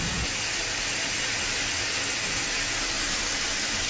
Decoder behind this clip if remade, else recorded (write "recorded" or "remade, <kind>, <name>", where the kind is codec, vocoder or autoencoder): recorded